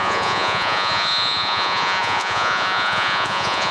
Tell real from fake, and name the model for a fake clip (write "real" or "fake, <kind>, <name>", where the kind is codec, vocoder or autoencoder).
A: fake, vocoder, Vocos